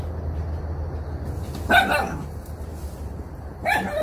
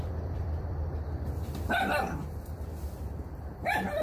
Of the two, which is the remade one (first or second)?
second